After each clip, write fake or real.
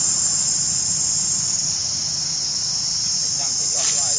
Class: real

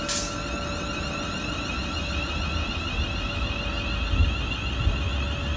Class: real